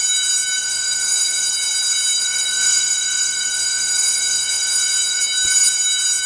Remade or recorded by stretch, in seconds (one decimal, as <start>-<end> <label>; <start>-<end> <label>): 0.0-0.6 recorded; 0.6-1.5 remade; 1.5-2.2 recorded; 2.2-5.2 remade; 5.2-6.3 recorded